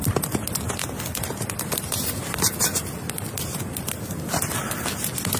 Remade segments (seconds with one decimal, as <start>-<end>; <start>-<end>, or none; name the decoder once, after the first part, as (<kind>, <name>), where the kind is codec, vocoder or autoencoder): 1.1-1.8 (vocoder, BigVGAN v2)